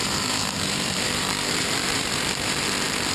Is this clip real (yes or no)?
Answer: no